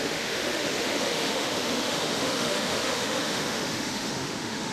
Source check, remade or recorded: remade